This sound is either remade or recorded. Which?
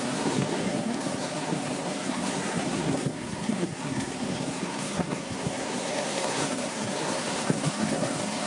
remade